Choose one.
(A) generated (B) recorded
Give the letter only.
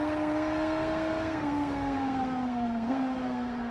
A